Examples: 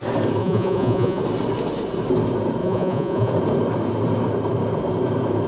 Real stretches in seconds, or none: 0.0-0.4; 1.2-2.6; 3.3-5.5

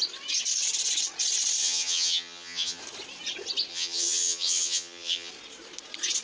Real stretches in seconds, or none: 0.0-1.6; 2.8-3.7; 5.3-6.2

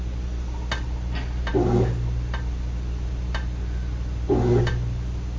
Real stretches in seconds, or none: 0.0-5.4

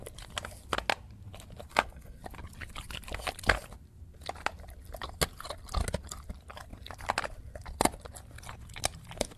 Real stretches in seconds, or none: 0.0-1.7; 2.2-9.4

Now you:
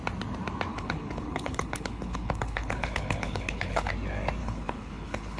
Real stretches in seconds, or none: 0.0-0.7; 3.9-4.4

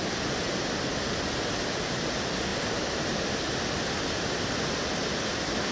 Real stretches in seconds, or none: 0.0-2.5

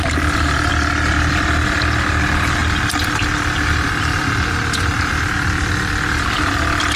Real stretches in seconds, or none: 0.7-2.2; 2.6-3.7

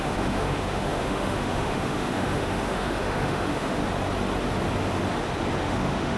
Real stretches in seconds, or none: 3.8-5.6